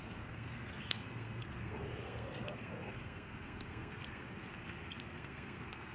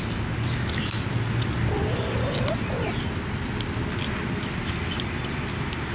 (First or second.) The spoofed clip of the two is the first